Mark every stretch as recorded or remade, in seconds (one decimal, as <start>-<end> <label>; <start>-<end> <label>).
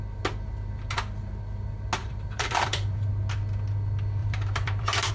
0.0-2.0 recorded; 2.0-3.1 remade; 3.1-4.2 recorded; 4.2-5.1 remade